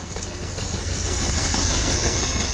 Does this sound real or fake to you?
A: fake